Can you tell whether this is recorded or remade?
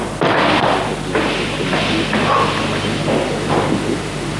recorded